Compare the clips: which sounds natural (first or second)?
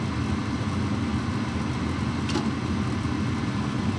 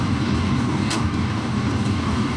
first